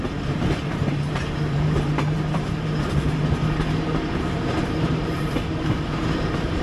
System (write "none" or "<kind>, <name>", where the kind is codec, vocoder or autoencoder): vocoder, BigVGAN v2